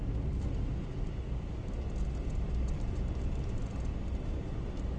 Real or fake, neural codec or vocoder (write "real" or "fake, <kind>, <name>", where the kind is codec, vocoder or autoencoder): real